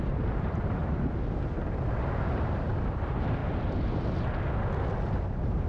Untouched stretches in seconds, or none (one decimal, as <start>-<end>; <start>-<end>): 0.8-1.9; 3.4-5.3

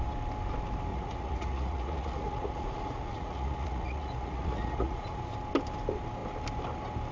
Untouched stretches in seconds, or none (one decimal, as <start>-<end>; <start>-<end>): 0.0-0.9; 5.2-7.1

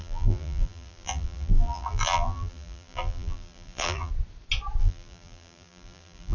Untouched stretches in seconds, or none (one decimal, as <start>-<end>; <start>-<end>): 4.1-4.8

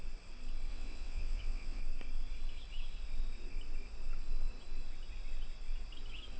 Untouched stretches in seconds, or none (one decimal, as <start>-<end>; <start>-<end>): 0.0-0.7; 1.8-6.4

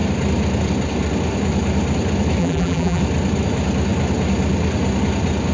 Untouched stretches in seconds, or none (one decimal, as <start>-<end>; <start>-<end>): 0.0-2.4; 3.0-5.5

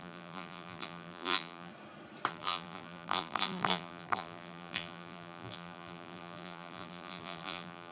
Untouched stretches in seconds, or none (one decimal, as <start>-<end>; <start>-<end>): 1.7-2.3